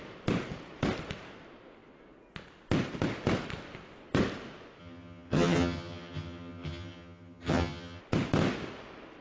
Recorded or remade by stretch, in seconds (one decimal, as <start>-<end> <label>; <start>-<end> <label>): 0.0-4.8 recorded; 4.8-8.0 remade; 8.0-9.2 recorded